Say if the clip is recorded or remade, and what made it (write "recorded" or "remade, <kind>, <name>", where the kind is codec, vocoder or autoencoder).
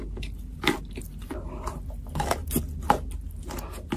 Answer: recorded